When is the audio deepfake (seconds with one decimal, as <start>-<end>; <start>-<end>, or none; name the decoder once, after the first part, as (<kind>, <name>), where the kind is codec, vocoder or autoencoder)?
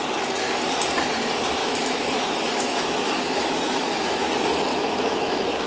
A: 1.6-4.3 (autoencoder, DAC-VAE); 4.7-5.3